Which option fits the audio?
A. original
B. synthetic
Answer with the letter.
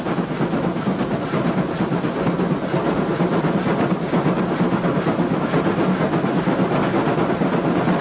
A